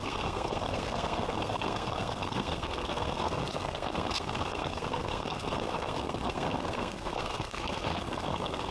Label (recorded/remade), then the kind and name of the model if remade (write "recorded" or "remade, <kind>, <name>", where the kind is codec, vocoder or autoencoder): remade, codec, SNAC